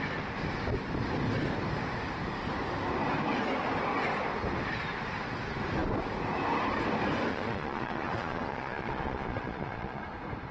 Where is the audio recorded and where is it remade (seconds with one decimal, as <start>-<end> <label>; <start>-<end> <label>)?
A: 0.0-7.3 recorded; 7.3-10.0 remade; 10.0-10.5 recorded